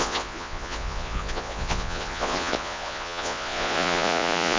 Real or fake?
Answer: fake